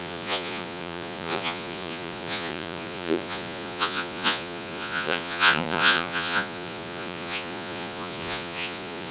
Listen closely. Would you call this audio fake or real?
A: fake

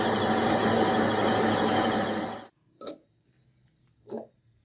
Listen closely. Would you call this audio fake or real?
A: real